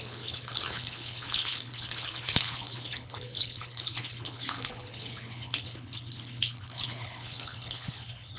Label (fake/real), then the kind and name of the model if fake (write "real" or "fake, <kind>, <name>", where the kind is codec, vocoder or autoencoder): fake, codec, HILCodec